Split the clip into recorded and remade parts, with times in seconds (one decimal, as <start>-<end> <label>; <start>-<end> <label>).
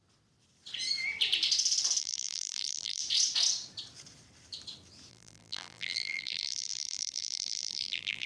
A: 0.0-2.0 recorded; 2.0-3.0 remade; 3.0-5.1 recorded; 5.1-8.3 remade